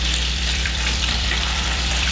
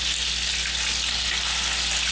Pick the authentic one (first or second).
second